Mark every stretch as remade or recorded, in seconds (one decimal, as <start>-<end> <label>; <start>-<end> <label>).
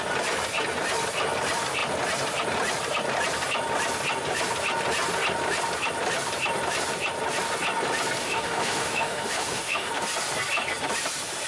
0.0-8.2 recorded; 8.2-9.9 remade; 9.9-11.5 recorded